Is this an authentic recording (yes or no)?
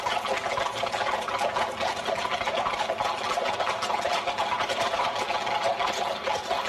yes